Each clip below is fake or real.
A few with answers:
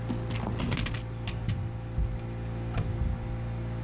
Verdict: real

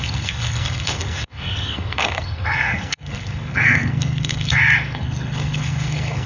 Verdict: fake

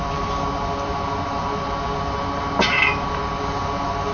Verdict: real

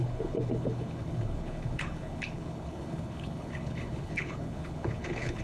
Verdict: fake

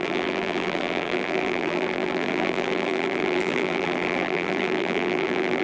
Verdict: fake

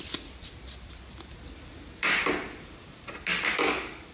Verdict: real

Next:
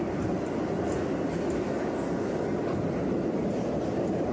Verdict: real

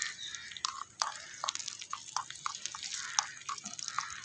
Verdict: real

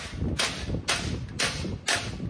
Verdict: real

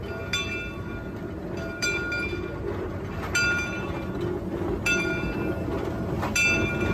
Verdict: real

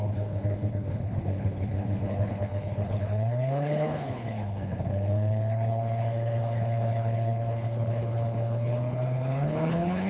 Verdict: fake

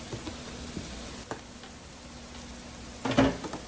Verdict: real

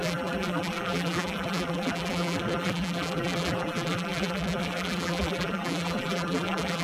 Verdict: fake